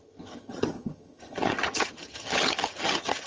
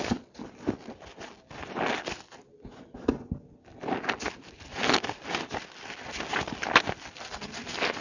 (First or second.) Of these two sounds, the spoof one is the first